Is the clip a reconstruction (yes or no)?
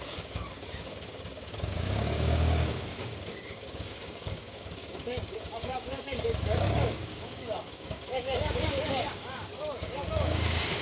yes